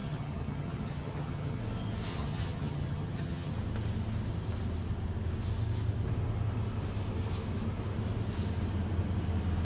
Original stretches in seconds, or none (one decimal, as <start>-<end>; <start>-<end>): 1.6-2.1; 3.5-9.6